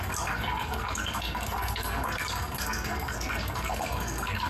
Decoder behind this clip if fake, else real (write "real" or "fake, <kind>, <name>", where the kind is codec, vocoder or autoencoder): fake, codec, SNAC